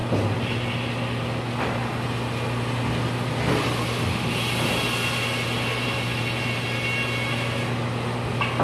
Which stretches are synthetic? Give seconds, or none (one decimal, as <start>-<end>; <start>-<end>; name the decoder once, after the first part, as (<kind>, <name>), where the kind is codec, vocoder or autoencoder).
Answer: none